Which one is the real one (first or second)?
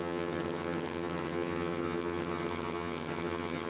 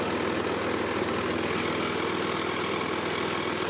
second